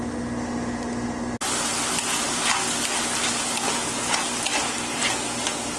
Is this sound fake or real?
real